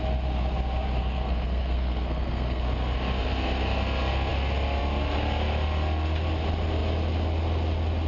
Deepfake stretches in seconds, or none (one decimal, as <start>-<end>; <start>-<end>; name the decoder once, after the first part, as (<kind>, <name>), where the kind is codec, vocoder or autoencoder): 1.0-2.6 (codec, SNAC)